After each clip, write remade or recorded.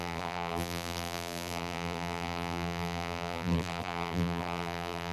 remade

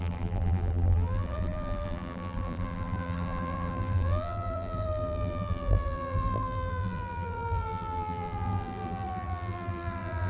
remade